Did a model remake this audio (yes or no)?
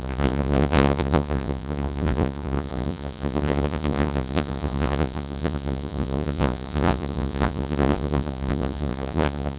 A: yes